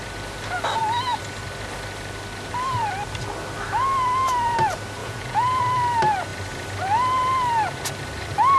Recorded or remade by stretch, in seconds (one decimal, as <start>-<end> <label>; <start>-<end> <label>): 0.0-5.0 recorded; 5.0-5.6 remade; 5.6-8.6 recorded